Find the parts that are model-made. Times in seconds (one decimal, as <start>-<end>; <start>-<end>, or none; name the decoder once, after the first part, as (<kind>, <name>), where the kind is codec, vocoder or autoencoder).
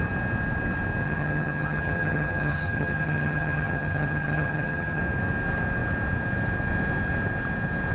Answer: 1.0-5.0 (vocoder, HiFi-GAN)